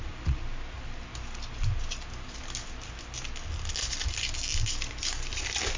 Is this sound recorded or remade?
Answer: recorded